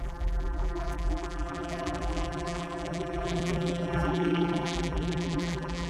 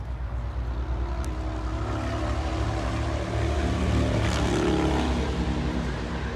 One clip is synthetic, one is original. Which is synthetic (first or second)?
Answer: first